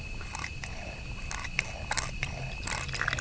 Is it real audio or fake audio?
real